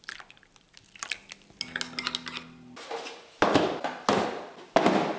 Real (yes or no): yes